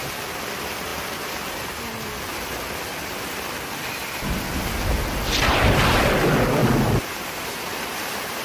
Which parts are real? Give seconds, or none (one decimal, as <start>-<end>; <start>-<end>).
0.0-6.6; 7.5-8.4